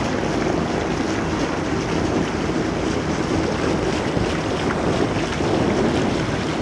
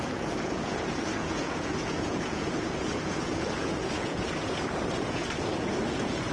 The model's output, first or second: second